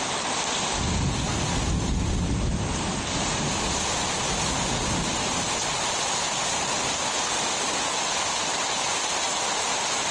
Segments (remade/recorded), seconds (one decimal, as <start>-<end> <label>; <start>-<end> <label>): 0.0-10.1 recorded